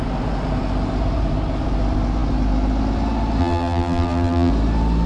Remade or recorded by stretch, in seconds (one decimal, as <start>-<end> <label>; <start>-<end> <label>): 0.0-3.4 recorded; 3.4-4.5 remade; 4.5-5.1 recorded